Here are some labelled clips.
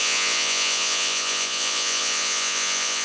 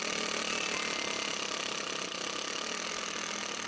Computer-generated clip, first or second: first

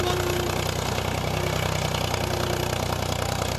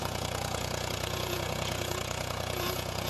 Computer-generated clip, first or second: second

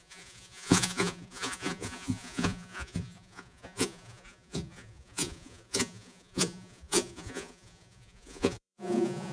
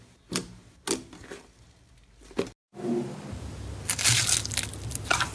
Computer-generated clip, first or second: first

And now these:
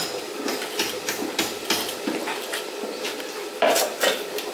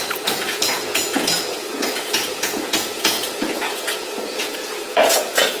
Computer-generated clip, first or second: second